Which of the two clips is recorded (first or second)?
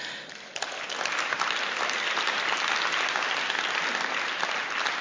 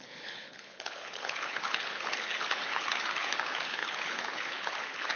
first